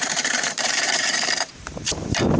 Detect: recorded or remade remade